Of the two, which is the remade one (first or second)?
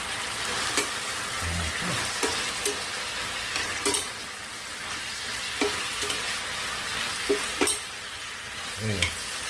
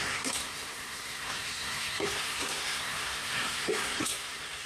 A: second